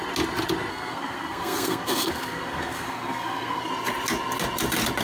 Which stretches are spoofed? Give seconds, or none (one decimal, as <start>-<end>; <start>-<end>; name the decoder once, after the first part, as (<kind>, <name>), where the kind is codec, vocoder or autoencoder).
0.7-3.7 (codec, SNAC)